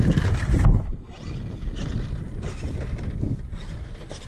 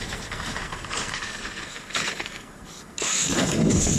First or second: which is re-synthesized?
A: second